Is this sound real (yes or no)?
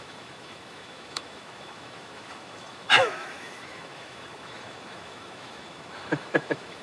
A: no